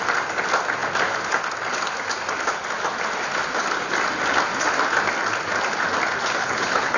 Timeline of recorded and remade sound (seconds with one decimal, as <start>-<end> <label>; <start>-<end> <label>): 0.0-6.4 recorded; 6.4-7.0 remade